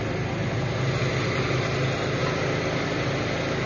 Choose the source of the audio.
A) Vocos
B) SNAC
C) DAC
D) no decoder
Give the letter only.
D